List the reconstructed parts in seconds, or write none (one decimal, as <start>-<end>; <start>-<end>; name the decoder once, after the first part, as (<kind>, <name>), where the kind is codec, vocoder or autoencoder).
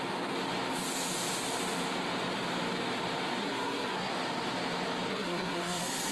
3.4-4.1 (codec, SNAC); 5.1-6.1